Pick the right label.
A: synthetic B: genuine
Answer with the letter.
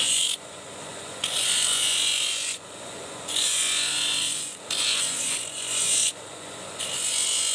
A